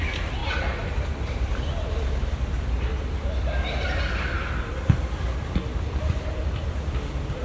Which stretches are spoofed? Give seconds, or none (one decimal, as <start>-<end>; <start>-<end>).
none